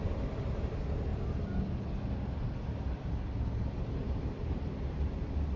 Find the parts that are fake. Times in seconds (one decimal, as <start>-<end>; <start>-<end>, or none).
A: none